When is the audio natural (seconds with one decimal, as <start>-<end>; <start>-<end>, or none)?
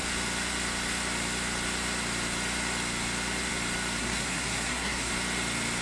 0.0-4.0; 5.1-5.8